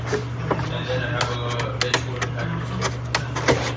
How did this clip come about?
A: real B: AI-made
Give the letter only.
A